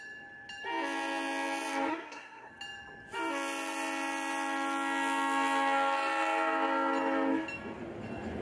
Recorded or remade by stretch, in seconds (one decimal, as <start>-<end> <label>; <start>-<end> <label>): 0.0-1.9 recorded; 1.9-2.5 remade; 2.5-8.4 recorded